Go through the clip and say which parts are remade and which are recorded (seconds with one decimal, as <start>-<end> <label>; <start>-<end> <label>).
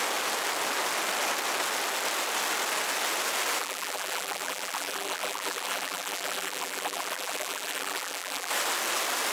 0.0-3.6 recorded; 3.6-8.5 remade; 8.5-9.3 recorded